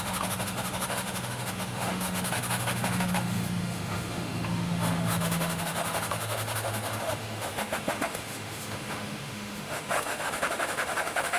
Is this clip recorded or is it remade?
remade